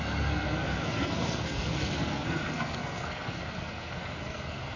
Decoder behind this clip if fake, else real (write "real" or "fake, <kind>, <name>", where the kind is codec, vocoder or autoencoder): fake, codec, SNAC